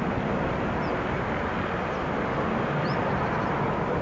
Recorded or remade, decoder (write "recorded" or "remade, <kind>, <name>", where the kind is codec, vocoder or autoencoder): recorded